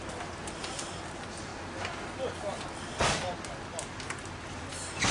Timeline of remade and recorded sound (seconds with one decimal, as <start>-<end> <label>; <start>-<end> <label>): 0.0-5.1 recorded